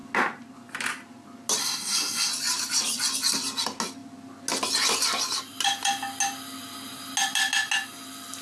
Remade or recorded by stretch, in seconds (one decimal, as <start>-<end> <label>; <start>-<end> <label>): 0.0-1.6 recorded; 1.6-2.3 remade; 2.3-8.4 recorded